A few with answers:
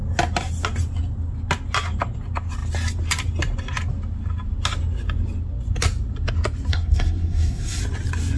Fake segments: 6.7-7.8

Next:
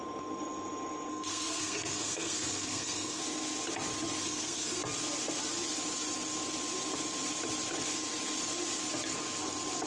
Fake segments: 1.1-3.2; 4.2-4.8

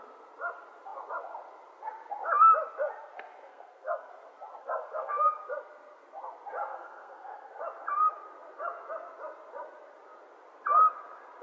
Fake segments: 3.5-4.1; 4.6-5.4; 6.7-7.6

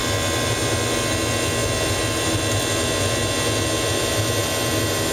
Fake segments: none